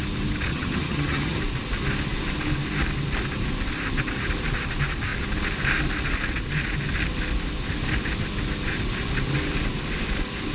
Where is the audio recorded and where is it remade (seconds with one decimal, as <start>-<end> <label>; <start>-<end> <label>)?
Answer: 0.0-0.5 recorded; 0.5-1.4 remade; 1.4-10.5 recorded

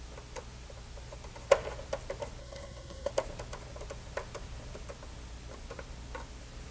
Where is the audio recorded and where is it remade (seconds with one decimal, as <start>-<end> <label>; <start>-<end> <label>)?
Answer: 0.0-2.4 recorded; 2.4-3.1 remade; 3.1-6.7 recorded

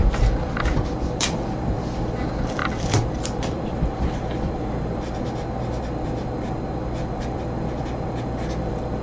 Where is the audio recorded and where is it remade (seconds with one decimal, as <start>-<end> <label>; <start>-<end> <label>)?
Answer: 0.0-9.0 remade

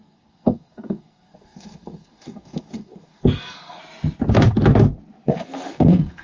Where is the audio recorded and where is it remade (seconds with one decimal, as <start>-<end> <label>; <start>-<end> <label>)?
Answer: 0.0-3.8 remade; 3.8-5.3 recorded; 5.3-6.2 remade

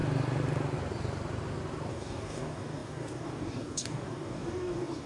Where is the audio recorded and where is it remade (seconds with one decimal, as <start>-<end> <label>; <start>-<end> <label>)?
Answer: 0.0-1.9 recorded; 1.9-5.1 remade

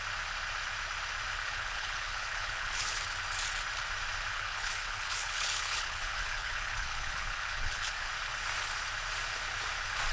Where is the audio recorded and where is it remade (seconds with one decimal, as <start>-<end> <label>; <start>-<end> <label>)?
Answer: 0.0-1.4 recorded; 1.4-3.0 remade; 3.0-4.3 recorded; 4.3-8.1 remade; 8.1-10.1 recorded

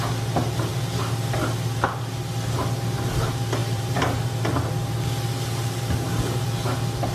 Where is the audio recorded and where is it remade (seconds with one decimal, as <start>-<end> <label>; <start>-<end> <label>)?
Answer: 0.0-3.6 recorded; 3.6-4.3 remade; 4.3-7.1 recorded

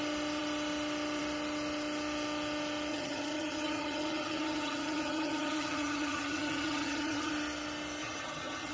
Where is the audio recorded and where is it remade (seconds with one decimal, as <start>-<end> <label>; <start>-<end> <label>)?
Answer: 0.0-2.9 recorded; 2.9-7.3 remade; 7.3-8.0 recorded; 8.0-8.7 remade